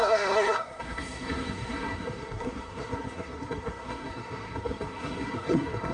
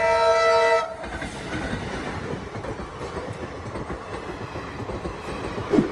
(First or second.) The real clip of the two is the second